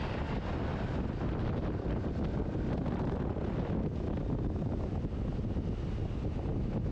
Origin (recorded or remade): recorded